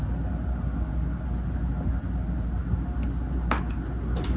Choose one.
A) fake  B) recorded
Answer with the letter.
B